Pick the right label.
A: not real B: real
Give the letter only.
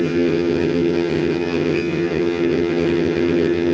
A